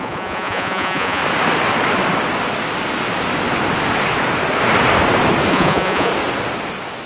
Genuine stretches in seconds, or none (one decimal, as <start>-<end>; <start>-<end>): 1.2-5.5; 6.1-7.1